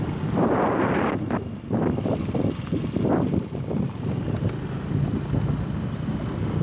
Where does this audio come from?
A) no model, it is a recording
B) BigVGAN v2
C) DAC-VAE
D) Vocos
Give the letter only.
A